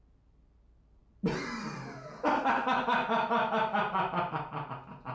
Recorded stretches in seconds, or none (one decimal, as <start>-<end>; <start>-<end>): 0.0-5.1